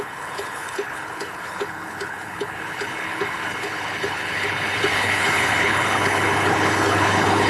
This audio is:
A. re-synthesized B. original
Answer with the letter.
A